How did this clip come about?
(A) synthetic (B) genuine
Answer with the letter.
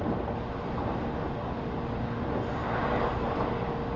B